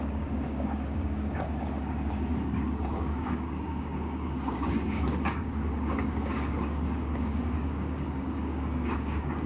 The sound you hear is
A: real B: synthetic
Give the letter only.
B